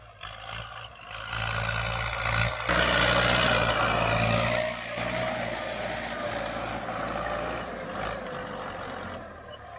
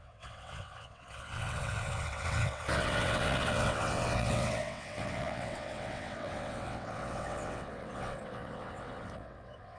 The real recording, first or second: first